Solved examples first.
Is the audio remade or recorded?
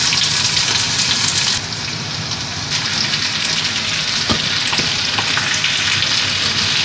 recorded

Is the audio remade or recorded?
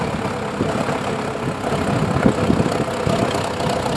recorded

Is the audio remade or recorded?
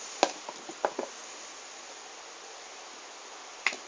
recorded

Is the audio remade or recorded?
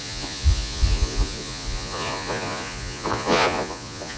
remade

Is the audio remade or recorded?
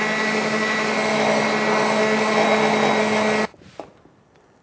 recorded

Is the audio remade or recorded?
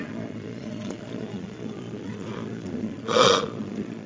remade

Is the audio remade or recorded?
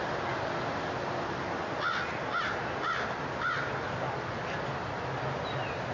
recorded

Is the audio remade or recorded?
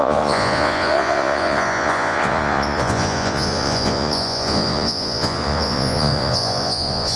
remade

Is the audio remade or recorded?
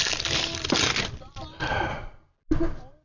recorded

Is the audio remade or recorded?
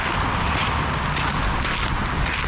recorded